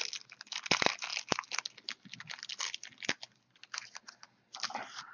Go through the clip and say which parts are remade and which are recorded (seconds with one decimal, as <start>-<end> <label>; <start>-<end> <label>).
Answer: 0.0-5.1 recorded